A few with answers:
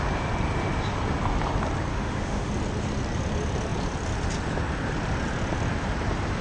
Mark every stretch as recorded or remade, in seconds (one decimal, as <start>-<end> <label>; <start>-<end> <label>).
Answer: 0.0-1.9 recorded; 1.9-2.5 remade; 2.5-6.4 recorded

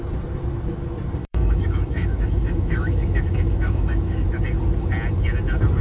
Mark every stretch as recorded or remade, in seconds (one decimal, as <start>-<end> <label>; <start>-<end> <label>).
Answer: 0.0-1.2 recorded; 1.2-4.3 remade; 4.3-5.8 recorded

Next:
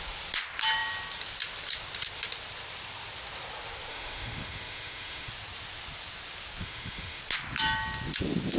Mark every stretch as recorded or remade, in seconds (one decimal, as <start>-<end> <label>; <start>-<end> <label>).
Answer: 0.0-3.9 recorded; 3.9-5.3 remade; 5.3-6.6 recorded; 6.6-7.2 remade; 7.2-8.6 recorded